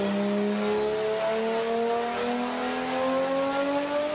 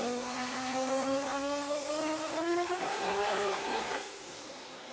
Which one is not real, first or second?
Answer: second